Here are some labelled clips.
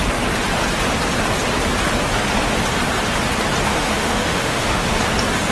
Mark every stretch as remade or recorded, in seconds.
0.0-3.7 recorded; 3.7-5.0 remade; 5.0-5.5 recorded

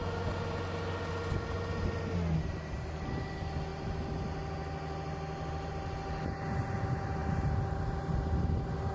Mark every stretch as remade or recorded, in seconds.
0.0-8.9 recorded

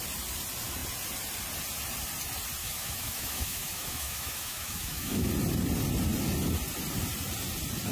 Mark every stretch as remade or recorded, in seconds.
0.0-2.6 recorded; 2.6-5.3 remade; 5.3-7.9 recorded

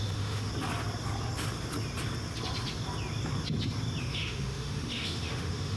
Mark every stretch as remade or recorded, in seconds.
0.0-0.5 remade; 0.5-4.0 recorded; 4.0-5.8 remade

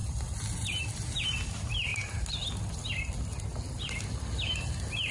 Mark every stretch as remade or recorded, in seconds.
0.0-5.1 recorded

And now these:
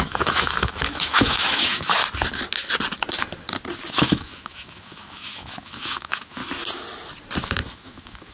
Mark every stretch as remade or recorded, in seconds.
0.0-2.0 remade; 2.0-3.9 recorded; 3.9-6.4 remade; 6.4-7.7 recorded; 7.7-8.3 remade